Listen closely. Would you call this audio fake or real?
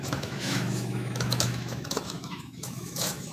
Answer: fake